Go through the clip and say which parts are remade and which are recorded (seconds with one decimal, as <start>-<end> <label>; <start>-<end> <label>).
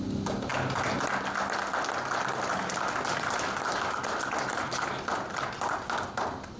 0.0-6.6 recorded